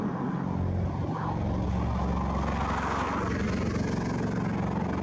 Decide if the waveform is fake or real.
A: real